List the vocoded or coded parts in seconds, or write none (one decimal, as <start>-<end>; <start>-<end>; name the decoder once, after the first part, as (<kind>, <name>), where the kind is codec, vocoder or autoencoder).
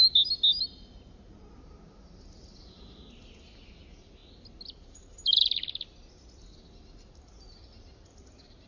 none